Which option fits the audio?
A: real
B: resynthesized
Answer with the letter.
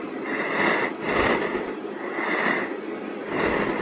A